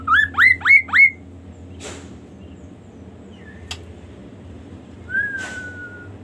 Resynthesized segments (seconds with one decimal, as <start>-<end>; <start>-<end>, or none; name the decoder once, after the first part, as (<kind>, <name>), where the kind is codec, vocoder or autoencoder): 4.2-6.2 (vocoder, BigVGAN v2)